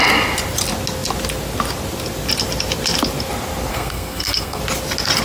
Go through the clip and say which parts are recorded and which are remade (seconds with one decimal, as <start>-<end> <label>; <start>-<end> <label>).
0.0-3.7 recorded; 3.7-4.6 remade; 4.6-5.2 recorded